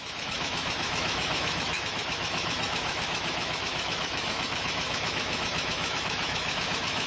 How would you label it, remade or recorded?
remade